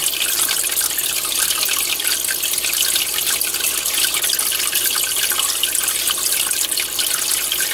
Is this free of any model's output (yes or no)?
yes